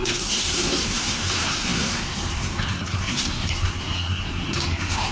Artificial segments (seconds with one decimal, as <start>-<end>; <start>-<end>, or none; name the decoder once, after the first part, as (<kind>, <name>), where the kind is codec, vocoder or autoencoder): 0.0-5.1 (codec, SNAC)